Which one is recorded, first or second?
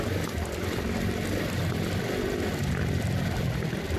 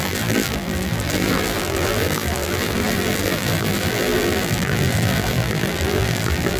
first